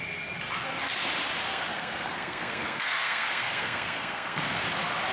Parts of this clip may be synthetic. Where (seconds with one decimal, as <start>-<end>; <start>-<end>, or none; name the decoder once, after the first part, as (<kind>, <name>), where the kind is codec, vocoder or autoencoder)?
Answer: 1.5-4.6 (codec, SNAC)

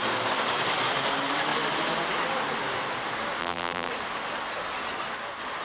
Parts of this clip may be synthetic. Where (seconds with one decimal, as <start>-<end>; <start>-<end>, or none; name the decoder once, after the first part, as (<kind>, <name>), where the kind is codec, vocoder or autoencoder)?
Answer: 3.4-3.9 (vocoder, BigVGAN v2)

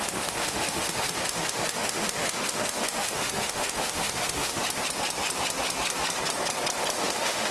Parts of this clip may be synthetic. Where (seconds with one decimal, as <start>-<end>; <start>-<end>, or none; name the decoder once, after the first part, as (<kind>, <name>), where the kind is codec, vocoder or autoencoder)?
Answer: 0.0-4.6 (autoencoder, DAC-VAE); 7.0-7.5

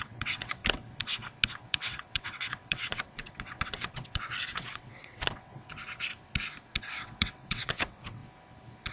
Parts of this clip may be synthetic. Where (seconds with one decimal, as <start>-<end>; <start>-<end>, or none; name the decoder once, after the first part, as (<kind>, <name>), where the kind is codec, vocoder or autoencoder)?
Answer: 0.0-0.6 (vocoder, WaveNeXt); 1.6-5.8; 6.8-8.2